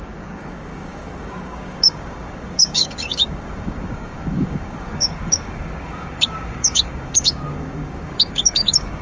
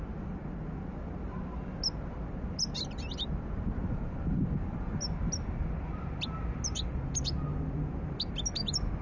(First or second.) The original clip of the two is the second